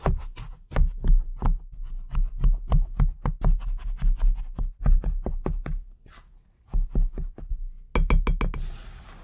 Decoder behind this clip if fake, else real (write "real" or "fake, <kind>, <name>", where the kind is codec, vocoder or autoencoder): real